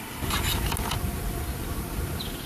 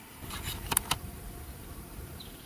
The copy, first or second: second